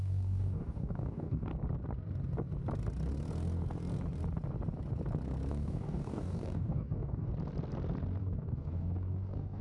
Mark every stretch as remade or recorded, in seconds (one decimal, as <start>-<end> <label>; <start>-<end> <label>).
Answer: 0.0-1.5 remade; 1.5-5.5 recorded; 5.5-7.3 remade; 7.3-8.2 recorded; 8.2-9.6 remade